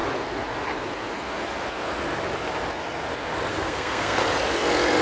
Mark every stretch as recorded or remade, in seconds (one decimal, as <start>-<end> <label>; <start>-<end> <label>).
0.0-3.5 recorded; 3.5-4.2 remade; 4.2-5.0 recorded